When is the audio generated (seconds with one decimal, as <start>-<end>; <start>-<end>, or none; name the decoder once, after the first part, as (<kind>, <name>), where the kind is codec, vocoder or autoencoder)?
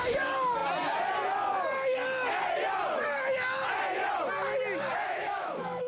5.0-5.9 (autoencoder, DAC-VAE)